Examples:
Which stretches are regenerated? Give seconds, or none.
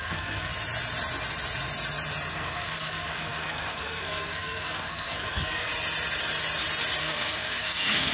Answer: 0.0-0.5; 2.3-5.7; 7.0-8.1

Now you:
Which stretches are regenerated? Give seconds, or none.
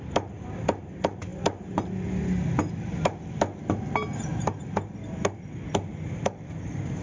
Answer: none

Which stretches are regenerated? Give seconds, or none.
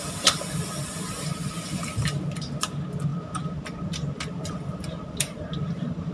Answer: none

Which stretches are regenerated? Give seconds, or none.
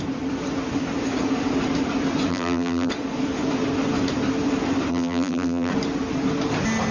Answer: 2.3-2.9; 4.9-5.7